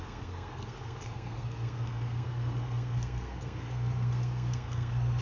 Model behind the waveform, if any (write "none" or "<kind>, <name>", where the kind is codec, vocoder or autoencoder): codec, SNAC